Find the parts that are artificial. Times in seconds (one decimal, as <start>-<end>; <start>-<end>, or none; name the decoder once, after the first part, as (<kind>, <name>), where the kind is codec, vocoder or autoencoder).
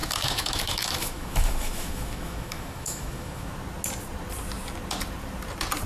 0.0-3.5 (autoencoder, DAC-VAE)